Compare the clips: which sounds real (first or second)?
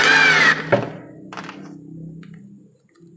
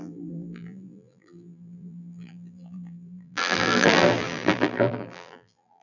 first